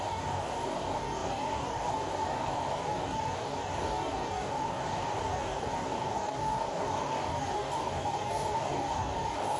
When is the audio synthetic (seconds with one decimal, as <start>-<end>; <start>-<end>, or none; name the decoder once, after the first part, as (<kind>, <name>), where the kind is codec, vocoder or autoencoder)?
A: 0.0-9.6 (codec, DAC)